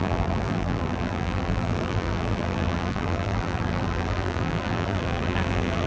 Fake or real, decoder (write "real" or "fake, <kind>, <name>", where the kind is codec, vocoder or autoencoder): fake, vocoder, BigVGAN v2